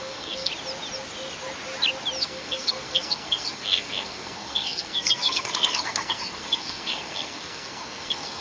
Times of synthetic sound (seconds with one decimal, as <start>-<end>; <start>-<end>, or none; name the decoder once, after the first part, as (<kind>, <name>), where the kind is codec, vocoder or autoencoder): 0.0-0.5 (codec, SNAC); 2.2-8.4